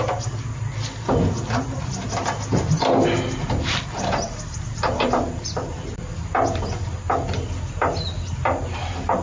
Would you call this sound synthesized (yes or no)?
no